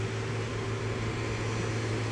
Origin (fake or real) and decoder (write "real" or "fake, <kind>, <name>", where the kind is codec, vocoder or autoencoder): real